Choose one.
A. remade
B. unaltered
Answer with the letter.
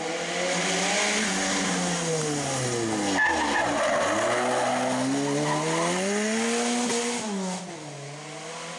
B